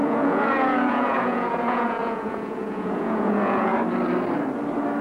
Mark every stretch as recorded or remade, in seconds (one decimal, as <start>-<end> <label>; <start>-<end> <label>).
0.0-3.7 remade; 3.7-5.0 recorded